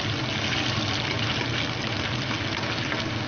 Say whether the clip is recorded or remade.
recorded